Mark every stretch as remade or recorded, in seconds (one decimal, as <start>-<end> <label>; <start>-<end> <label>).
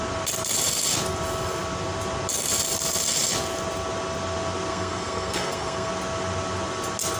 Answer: 0.0-4.7 recorded; 4.7-5.9 remade; 5.9-7.2 recorded